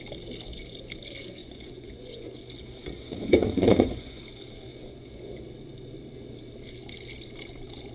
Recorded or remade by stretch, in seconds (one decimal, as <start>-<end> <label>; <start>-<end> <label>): 0.0-1.4 recorded; 1.4-2.4 remade; 2.4-2.8 recorded; 2.8-4.2 remade; 4.2-4.7 recorded; 4.7-5.5 remade; 5.5-7.9 recorded